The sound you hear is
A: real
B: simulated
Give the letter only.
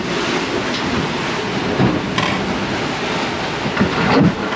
A